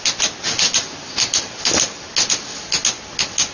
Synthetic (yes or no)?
no